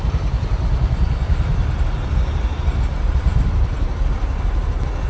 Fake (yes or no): no